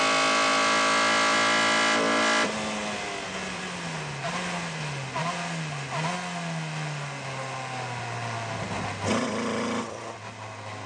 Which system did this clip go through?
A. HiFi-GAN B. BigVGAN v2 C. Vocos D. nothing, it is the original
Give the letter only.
D